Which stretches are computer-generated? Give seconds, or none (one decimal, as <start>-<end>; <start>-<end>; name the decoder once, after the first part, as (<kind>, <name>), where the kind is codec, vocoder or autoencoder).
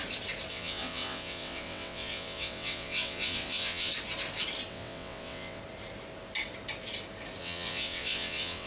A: 0.5-3.9 (vocoder, WaveNeXt); 4.7-5.6; 7.4-8.7